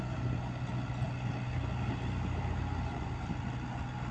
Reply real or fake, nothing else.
real